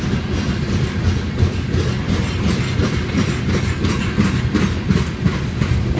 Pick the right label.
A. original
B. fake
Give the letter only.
A